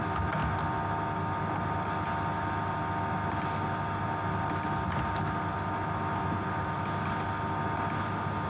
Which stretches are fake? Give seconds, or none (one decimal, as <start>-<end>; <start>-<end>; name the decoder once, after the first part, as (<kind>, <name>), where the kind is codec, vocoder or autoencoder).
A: none